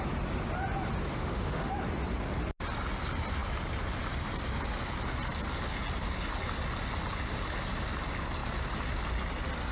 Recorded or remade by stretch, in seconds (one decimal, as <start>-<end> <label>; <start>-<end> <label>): 0.0-1.1 recorded; 1.1-1.7 remade; 1.7-9.7 recorded